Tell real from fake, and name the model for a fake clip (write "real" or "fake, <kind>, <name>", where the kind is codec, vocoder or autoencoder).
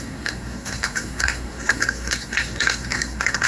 fake, codec, SNAC